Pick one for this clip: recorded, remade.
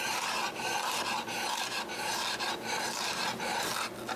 recorded